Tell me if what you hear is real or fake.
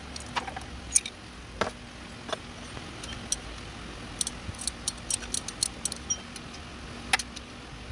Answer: real